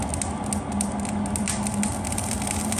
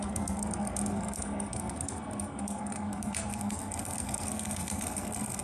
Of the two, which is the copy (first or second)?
second